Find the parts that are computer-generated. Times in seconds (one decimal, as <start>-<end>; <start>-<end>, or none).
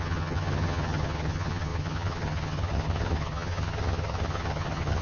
0.0-5.0